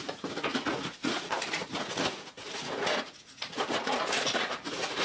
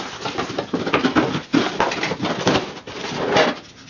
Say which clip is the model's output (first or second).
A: first